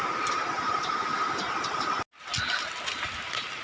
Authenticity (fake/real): real